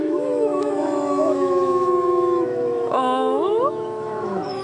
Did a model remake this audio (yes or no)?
yes